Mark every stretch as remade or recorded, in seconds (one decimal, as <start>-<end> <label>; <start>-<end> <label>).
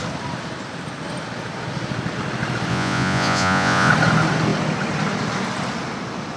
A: 0.0-2.7 recorded; 2.7-3.9 remade; 3.9-6.4 recorded